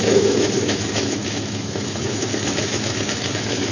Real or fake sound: fake